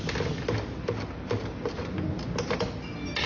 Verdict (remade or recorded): recorded